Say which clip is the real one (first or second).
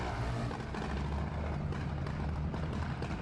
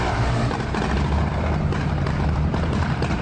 first